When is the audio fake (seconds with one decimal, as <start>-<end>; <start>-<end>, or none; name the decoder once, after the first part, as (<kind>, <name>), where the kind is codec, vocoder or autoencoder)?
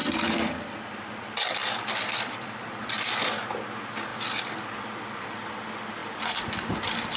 0.0-1.1 (vocoder, BigVGAN v2); 1.6-3.1; 4.1-4.6; 6.0-6.8